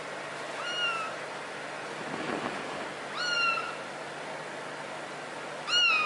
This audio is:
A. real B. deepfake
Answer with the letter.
A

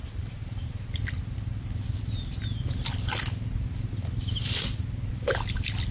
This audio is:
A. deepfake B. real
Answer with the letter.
B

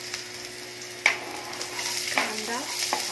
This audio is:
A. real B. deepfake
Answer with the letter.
A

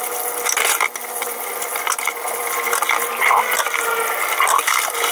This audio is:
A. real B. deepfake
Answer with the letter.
A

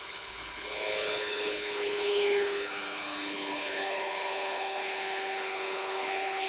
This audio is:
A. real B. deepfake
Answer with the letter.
B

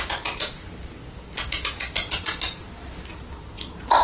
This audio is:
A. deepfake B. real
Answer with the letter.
B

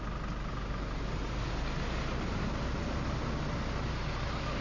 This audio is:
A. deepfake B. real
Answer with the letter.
B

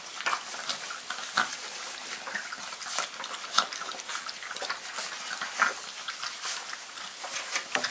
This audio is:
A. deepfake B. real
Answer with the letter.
B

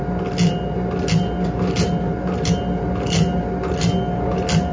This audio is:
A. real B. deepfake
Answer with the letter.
A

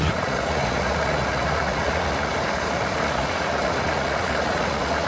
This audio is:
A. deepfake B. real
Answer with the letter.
A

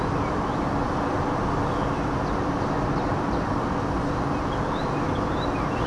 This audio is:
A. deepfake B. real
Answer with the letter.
B